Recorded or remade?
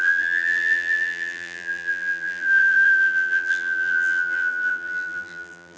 remade